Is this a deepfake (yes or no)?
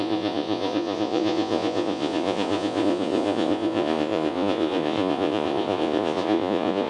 yes